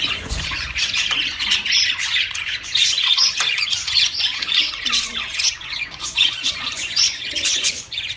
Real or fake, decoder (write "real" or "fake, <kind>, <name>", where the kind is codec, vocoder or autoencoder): fake, vocoder, Vocos